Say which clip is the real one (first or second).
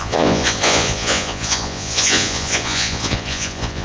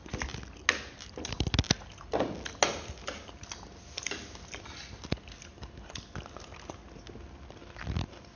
second